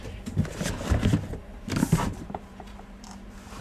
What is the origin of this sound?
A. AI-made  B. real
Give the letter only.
A